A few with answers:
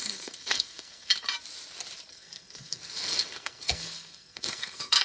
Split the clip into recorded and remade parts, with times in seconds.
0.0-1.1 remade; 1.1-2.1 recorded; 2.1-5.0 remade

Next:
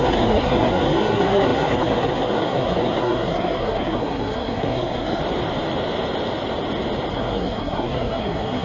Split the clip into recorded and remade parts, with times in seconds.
0.0-5.2 remade; 5.2-7.1 recorded; 7.1-8.6 remade

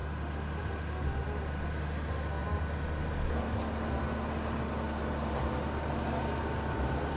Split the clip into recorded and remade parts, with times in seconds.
0.0-7.2 recorded

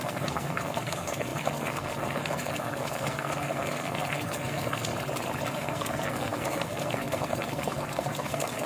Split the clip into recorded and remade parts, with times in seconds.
0.0-4.9 remade; 4.9-5.5 recorded; 5.5-8.7 remade

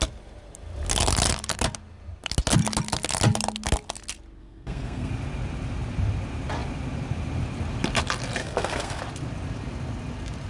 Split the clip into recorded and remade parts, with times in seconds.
0.0-4.4 recorded; 4.4-5.1 remade; 5.1-8.4 recorded; 8.4-9.0 remade; 9.0-10.5 recorded

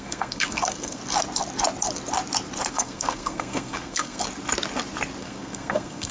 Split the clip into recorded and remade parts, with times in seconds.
0.0-1.0 remade; 1.0-2.7 recorded; 2.7-4.2 remade; 4.2-5.2 recorded; 5.2-6.1 remade

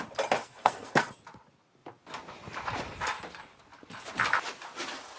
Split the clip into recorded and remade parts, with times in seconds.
0.0-0.4 recorded; 0.4-1.1 remade; 1.1-5.2 recorded